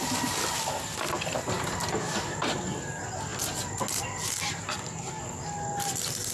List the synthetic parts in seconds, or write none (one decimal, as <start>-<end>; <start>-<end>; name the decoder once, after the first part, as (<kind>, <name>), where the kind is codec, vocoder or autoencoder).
none